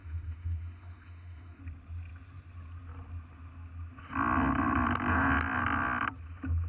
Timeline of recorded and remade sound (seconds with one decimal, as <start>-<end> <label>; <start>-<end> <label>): 0.0-1.6 remade; 1.6-6.7 recorded